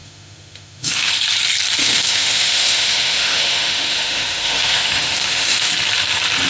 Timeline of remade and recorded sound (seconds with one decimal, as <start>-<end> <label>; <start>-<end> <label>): 0.0-1.1 remade; 1.1-1.8 recorded; 1.8-5.7 remade; 5.7-6.5 recorded